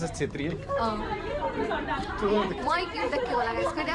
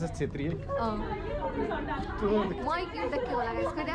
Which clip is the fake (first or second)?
first